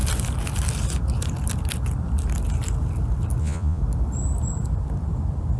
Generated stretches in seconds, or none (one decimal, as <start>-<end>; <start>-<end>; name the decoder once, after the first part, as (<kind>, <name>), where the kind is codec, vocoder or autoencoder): 3.4-3.8 (vocoder, Vocos)